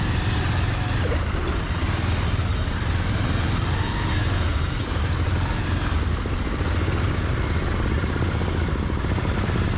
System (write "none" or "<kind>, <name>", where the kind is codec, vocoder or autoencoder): none